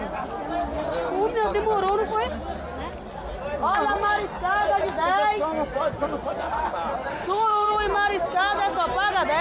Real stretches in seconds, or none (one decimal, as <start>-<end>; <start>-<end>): 0.0-7.1; 7.7-9.4